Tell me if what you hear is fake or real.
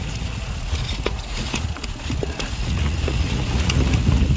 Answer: fake